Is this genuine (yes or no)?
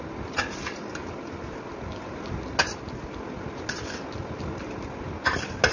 yes